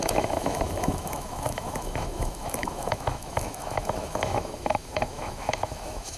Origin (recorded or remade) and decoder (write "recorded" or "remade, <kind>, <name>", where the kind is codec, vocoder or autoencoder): remade, autoencoder, DAC-VAE